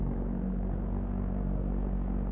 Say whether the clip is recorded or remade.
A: remade